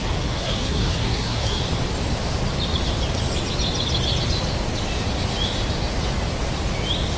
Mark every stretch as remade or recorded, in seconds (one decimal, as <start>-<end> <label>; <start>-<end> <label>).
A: 0.0-1.6 remade; 1.6-7.2 recorded